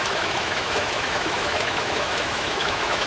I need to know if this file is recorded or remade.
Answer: remade